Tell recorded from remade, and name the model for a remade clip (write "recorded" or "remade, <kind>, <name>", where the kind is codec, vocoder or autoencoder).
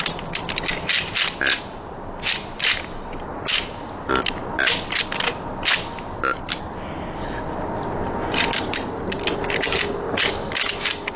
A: recorded